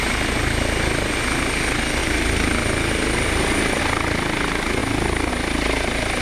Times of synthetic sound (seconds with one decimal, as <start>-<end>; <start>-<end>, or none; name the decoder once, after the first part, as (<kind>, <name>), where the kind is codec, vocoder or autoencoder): 2.0-3.8 (vocoder, BigVGAN v2)